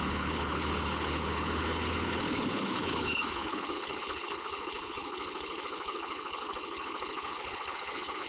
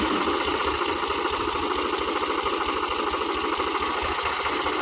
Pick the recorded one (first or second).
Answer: second